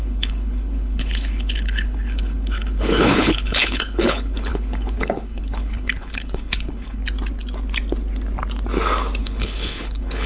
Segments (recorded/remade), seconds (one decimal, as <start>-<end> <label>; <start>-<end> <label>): 0.0-7.0 remade; 7.0-9.2 recorded; 9.2-10.3 remade